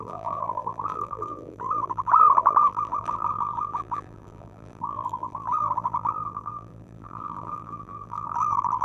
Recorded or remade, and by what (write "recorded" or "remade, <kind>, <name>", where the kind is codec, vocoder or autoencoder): remade, vocoder, BigVGAN v2